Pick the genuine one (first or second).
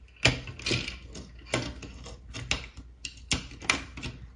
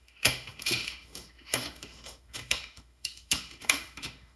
first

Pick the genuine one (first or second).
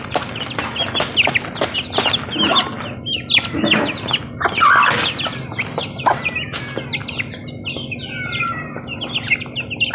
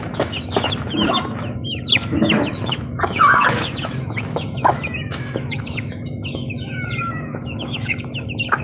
first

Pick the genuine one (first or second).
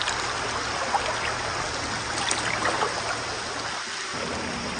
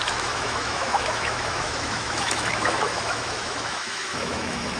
first